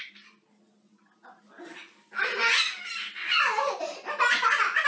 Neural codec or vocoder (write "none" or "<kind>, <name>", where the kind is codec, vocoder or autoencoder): none